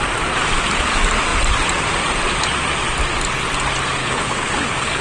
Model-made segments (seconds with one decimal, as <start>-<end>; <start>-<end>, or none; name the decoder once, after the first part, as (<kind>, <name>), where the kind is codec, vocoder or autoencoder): 4.0-5.0 (codec, HILCodec)